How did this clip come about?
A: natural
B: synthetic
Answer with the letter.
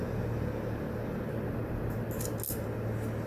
A